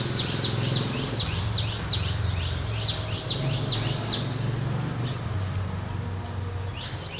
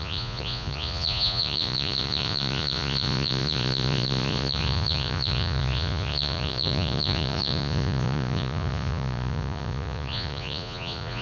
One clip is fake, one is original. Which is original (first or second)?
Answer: first